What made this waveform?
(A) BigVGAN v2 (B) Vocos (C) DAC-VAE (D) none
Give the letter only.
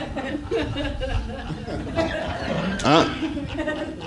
D